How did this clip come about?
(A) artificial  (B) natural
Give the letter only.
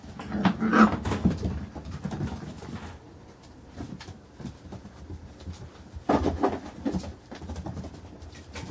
B